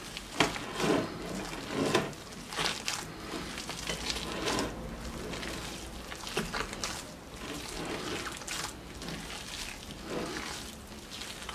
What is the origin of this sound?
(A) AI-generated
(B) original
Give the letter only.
B